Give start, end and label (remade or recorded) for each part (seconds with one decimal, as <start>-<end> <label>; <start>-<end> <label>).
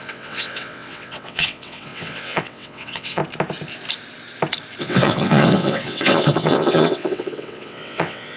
0.0-3.2 remade; 3.2-4.8 recorded; 4.8-8.4 remade